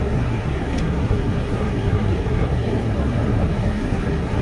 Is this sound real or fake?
fake